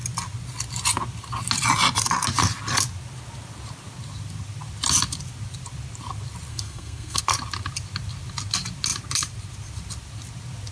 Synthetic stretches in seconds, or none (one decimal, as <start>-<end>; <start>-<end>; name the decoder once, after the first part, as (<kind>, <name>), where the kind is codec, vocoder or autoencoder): 6.5-7.2 (codec, SNAC)